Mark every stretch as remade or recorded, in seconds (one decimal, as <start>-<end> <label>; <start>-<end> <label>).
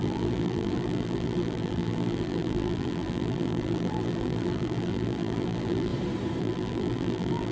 0.0-5.9 remade; 5.9-6.4 recorded; 6.4-7.5 remade